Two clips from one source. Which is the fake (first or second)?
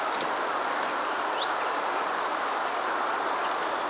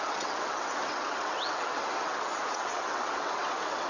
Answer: second